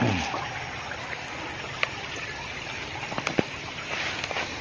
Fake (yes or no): no